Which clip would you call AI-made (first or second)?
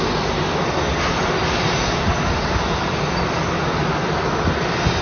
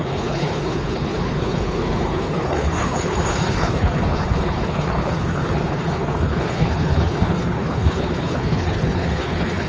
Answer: second